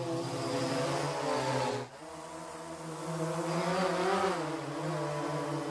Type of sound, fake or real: real